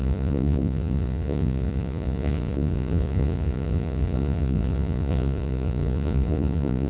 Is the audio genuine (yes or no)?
no